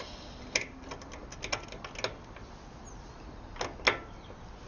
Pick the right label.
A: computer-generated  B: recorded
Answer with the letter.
B